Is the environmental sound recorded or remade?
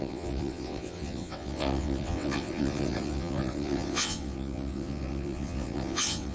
remade